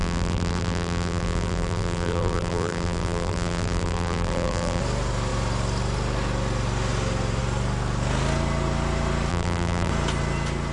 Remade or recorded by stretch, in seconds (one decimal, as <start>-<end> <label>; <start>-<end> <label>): 0.0-4.8 remade; 4.8-9.3 recorded; 9.3-9.9 remade; 9.9-10.7 recorded